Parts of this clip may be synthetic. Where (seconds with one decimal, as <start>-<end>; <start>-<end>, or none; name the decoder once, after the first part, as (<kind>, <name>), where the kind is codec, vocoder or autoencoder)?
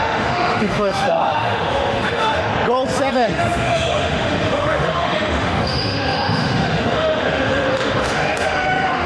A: 0.0-2.5 (autoencoder, DAC-VAE); 3.1-9.1